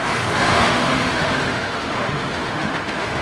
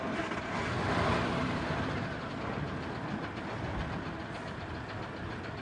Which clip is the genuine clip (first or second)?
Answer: second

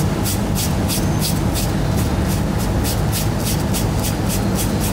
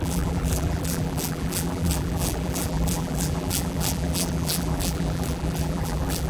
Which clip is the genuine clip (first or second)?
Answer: first